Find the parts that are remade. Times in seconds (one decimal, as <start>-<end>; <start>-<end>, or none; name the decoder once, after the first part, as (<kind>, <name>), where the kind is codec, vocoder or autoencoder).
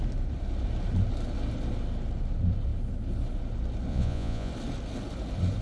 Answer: 3.9-4.5 (vocoder, Vocos)